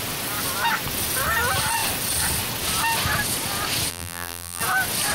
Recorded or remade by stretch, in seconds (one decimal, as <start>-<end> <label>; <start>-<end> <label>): 0.0-3.9 recorded; 3.9-4.6 remade; 4.6-5.1 recorded